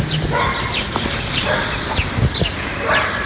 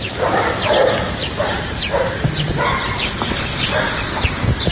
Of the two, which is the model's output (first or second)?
second